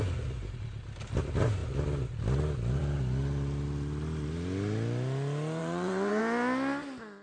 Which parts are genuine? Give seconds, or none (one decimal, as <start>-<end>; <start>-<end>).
0.0-5.6; 6.2-7.2